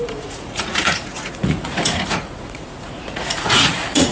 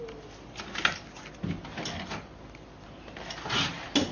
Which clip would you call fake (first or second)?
first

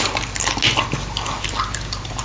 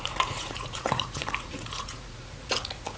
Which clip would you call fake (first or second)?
second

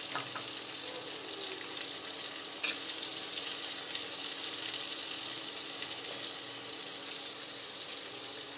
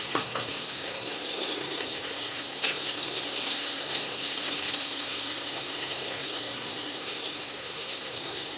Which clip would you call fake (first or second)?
second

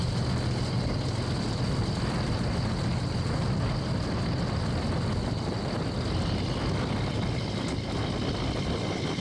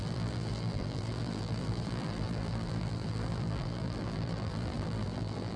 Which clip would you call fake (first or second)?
second